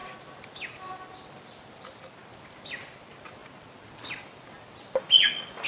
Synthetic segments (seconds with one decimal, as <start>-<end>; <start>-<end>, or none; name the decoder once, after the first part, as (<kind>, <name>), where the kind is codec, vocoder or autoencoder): none